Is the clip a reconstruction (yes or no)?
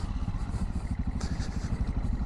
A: no